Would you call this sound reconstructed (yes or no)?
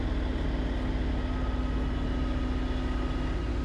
no